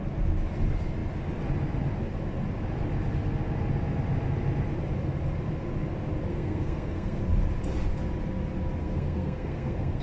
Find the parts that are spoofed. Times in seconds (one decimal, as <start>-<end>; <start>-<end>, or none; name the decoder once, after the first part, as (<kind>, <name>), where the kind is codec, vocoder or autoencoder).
6.3-7.2 (codec, SNAC); 8.8-10.0